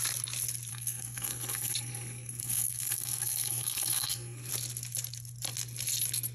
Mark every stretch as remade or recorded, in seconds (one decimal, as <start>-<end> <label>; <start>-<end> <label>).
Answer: 0.0-0.7 recorded; 0.7-4.5 remade; 4.5-6.3 recorded